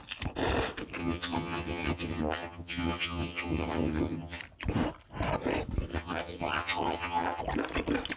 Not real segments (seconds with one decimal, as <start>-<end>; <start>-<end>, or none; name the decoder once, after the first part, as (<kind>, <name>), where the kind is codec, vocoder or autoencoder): 1.0-4.4 (vocoder, HiFi-GAN); 5.9-7.4